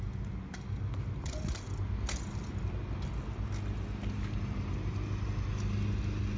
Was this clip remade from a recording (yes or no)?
no